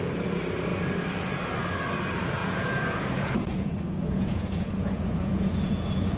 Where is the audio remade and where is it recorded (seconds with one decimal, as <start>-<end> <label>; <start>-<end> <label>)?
0.0-2.4 recorded; 2.4-6.2 remade